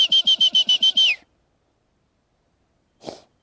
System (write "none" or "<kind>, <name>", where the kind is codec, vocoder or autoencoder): none